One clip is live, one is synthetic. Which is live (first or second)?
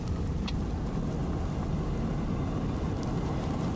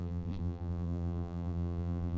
first